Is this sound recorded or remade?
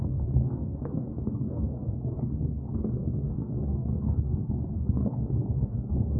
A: remade